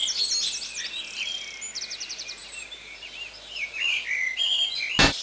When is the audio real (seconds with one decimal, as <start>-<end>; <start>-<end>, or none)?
0.0-2.4; 3.7-5.2